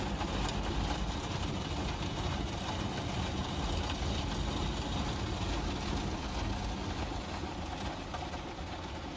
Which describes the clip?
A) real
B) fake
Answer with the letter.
A